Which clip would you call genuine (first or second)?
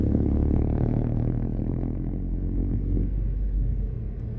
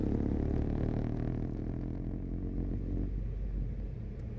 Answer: second